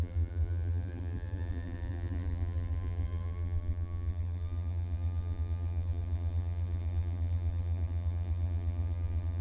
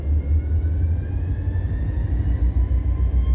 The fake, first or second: first